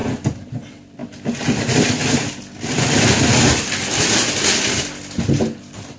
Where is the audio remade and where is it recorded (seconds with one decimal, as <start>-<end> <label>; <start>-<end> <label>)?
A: 0.0-0.5 recorded; 0.5-1.0 remade; 1.0-1.6 recorded; 1.6-2.0 remade; 2.0-5.6 recorded; 5.6-6.0 remade